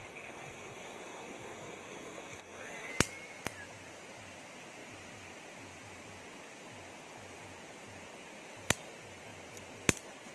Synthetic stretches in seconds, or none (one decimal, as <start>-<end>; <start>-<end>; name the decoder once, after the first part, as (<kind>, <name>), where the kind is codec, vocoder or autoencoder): 0.0-2.9 (codec, SNAC)